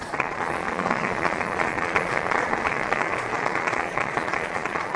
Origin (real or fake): fake